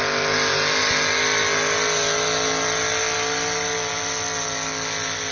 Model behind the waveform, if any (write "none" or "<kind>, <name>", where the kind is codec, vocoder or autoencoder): none